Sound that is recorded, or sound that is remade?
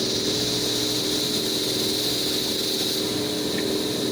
recorded